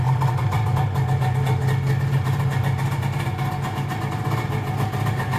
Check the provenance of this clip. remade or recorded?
recorded